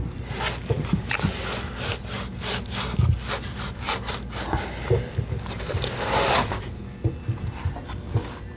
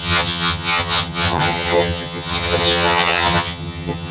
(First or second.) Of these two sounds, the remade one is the second